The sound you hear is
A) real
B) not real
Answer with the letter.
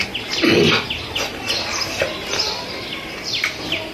A